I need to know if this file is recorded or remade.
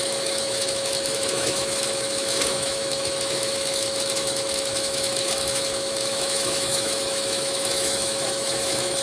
remade